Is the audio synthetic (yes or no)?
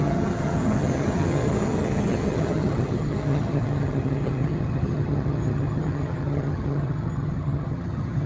yes